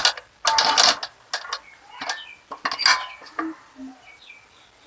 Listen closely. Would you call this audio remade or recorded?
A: recorded